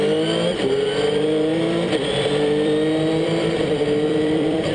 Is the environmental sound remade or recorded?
remade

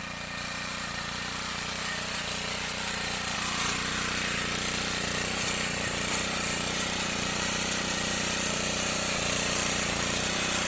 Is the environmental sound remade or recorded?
remade